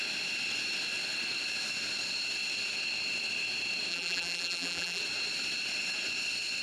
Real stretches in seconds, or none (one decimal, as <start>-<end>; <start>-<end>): 0.0-3.9; 5.0-6.6